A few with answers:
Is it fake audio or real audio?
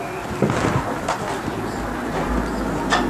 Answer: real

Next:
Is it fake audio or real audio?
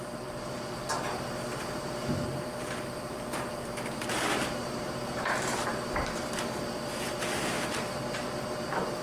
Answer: fake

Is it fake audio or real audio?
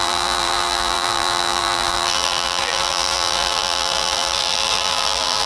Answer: fake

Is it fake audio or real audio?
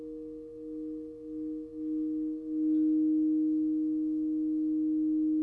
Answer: real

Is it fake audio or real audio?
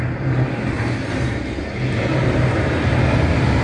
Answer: fake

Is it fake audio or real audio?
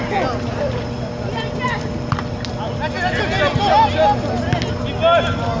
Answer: real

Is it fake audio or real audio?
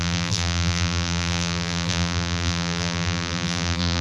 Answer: fake